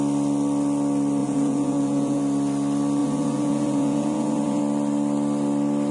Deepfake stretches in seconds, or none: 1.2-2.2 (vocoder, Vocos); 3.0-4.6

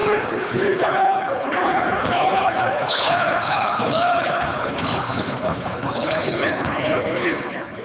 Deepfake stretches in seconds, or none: 0.0-7.8 (codec, HILCodec)

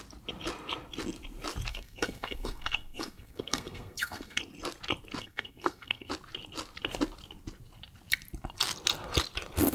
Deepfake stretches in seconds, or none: 1.7-4.4 (codec, SNAC); 5.2-6.1

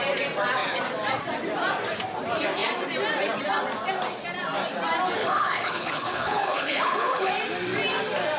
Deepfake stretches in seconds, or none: 5.2-7.3 (codec, HILCodec)